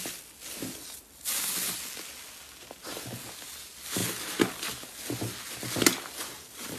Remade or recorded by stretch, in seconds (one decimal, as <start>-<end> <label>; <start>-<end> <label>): 0.0-6.8 recorded